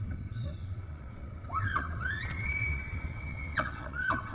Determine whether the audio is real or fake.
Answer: fake